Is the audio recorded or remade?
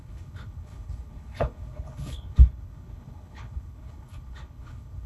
remade